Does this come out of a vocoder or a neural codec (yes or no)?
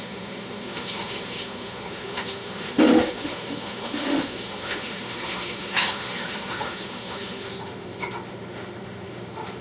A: yes